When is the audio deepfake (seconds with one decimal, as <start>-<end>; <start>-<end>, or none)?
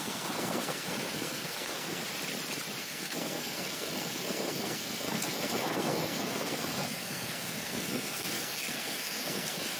0.0-2.0; 2.8-9.8